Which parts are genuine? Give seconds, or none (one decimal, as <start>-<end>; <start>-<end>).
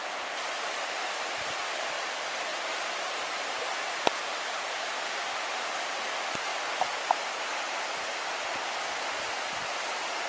0.0-2.5; 5.4-10.3